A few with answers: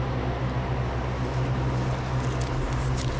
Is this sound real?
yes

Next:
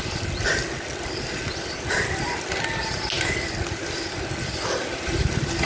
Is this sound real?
yes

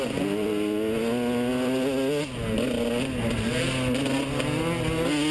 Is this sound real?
yes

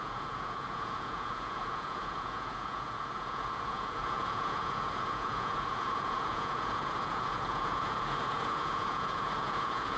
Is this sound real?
no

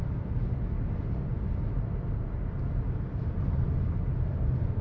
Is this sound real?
yes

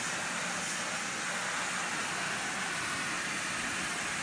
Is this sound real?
yes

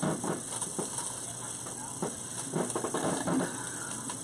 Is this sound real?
yes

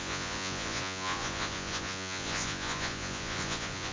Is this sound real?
no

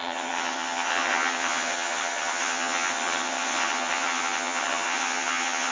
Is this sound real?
no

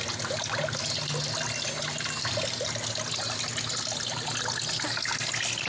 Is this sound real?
yes